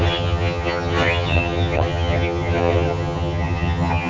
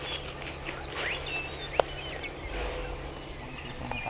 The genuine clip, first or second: second